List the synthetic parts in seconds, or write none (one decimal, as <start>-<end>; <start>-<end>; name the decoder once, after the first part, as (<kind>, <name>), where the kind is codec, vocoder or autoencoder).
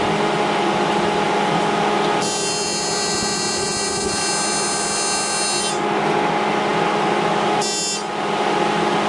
none